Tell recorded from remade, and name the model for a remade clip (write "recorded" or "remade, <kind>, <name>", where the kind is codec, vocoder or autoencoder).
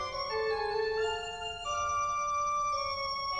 remade, vocoder, BigVGAN v2